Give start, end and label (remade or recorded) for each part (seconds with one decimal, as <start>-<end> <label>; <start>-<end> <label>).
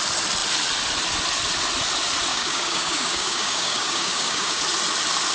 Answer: 0.0-2.3 recorded; 2.3-4.6 remade; 4.6-5.3 recorded